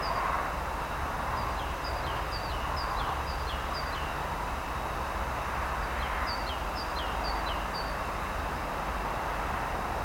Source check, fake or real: real